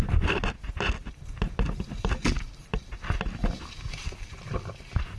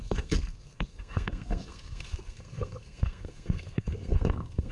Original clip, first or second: first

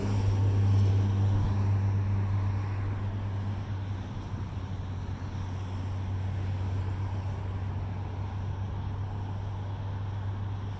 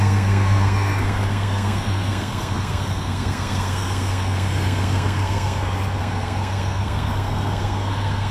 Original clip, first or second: first